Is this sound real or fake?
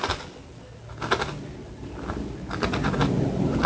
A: real